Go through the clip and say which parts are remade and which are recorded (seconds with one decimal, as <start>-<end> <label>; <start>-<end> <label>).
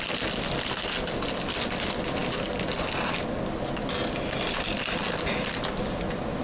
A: 0.0-6.4 recorded